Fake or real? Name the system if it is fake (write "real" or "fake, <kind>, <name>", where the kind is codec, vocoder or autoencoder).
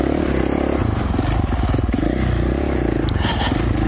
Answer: real